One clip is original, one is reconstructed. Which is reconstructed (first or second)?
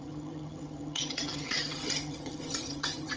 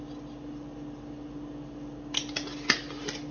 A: first